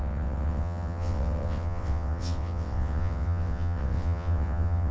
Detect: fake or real fake